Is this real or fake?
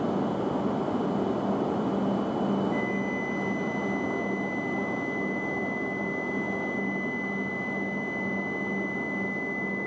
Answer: real